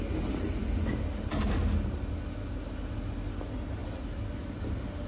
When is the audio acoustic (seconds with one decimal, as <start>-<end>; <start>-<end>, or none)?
0.0-5.1